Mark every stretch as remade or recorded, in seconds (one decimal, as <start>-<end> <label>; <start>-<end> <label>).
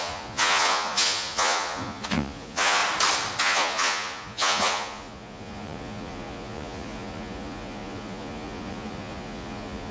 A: 0.0-2.8 remade; 2.8-3.4 recorded; 3.4-9.9 remade